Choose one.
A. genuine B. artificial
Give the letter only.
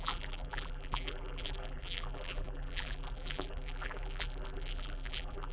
B